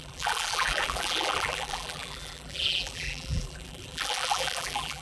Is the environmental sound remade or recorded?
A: remade